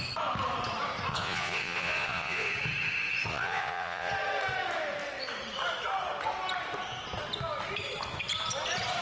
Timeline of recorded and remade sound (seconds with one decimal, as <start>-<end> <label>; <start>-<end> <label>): 0.0-1.1 recorded; 1.1-2.5 remade; 2.5-3.3 recorded; 3.3-4.1 remade; 4.1-9.0 recorded